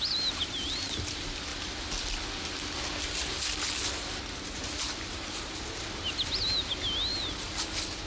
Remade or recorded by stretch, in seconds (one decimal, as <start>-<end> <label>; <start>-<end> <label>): 0.0-8.1 recorded